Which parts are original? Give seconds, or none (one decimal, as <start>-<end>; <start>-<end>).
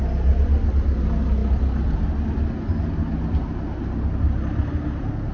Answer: 0.0-5.3